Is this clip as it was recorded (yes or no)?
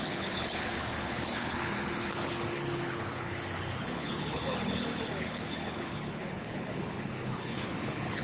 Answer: no